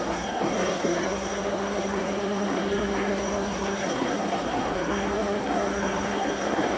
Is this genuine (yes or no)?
no